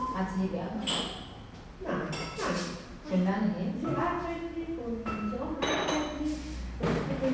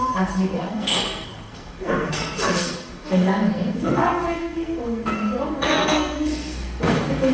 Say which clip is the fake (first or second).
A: second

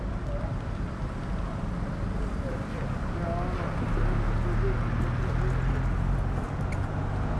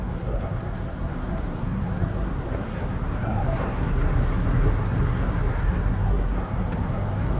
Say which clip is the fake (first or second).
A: second